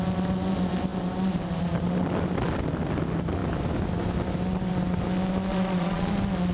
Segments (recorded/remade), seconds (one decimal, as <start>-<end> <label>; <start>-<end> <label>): 0.0-5.5 recorded; 5.5-6.1 remade; 6.1-6.5 recorded